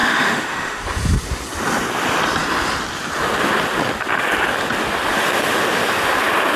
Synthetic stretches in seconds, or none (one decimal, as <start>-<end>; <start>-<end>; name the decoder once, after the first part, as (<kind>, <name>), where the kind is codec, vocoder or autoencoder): 0.0-0.8 (autoencoder, DAC-VAE)